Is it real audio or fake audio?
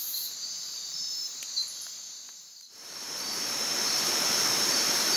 fake